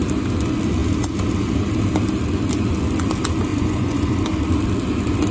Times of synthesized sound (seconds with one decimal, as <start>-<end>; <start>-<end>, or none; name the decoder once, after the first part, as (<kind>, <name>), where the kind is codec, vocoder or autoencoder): 3.5-4.1 (vocoder, Vocos)